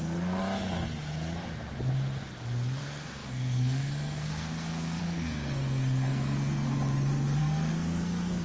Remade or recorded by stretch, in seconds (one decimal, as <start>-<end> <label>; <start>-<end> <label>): 0.0-0.4 remade; 0.4-2.8 recorded; 2.8-6.7 remade; 6.7-7.4 recorded; 7.4-8.4 remade